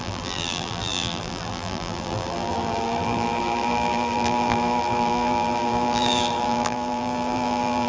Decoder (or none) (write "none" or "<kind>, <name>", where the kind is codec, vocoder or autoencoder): vocoder, BigVGAN v2